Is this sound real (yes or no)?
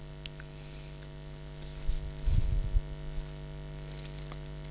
yes